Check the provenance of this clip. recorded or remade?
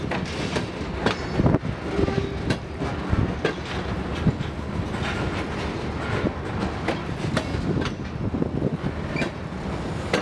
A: recorded